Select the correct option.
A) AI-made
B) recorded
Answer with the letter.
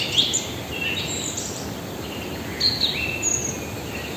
B